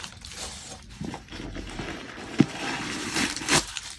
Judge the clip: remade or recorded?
remade